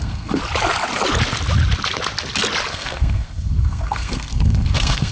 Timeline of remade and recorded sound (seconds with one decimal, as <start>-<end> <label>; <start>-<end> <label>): 0.0-0.4 remade; 0.4-2.7 recorded; 2.7-5.1 remade